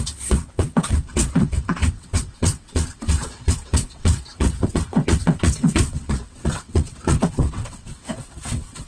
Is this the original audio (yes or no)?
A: no